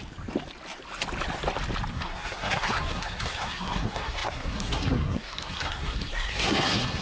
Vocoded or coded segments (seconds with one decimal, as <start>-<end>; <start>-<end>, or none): 1.9-7.0

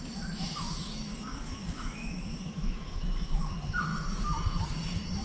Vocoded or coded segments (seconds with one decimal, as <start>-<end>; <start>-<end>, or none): 0.4-3.5; 3.9-4.6

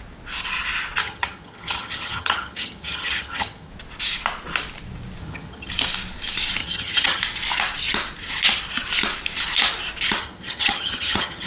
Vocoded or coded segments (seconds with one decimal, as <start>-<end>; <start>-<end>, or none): 1.0-3.7; 5.2-5.7; 6.6-7.2; 10.2-11.5

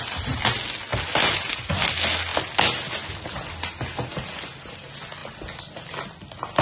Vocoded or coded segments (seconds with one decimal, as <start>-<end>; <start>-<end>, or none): none

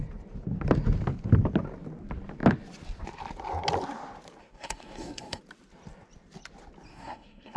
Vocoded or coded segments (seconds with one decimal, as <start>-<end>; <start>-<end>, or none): 4.4-5.4; 6.9-7.6

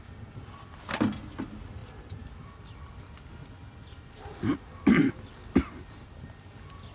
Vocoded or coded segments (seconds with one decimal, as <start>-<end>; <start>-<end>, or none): none

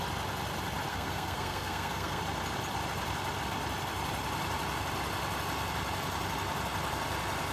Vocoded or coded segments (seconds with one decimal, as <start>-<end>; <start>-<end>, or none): 0.9-2.2

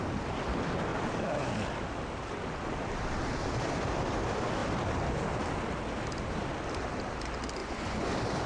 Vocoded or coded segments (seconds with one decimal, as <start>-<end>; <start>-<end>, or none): 7.6-8.1